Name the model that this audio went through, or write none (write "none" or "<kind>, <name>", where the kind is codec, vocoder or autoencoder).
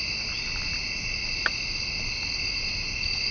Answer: none